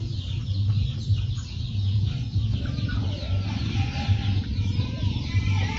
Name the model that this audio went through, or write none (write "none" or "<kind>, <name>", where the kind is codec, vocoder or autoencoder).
vocoder, BigVGAN v2